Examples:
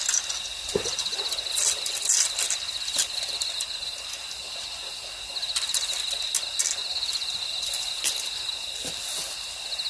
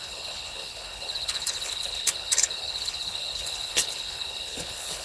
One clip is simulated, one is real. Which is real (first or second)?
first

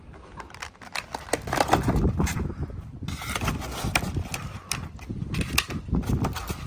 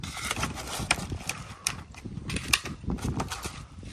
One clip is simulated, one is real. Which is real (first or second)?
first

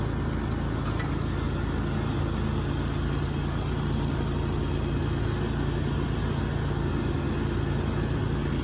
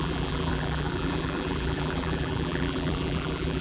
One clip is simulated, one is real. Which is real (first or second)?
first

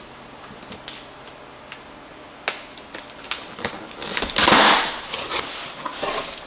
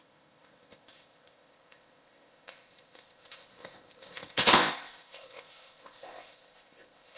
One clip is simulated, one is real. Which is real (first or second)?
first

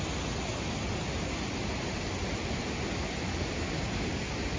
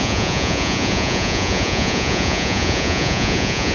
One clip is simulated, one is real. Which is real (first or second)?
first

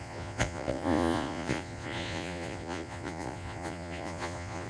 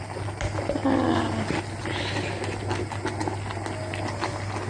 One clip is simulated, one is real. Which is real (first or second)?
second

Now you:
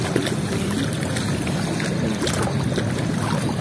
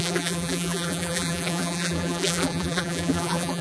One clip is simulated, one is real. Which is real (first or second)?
first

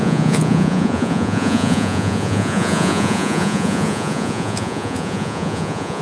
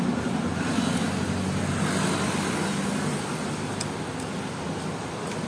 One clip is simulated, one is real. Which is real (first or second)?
second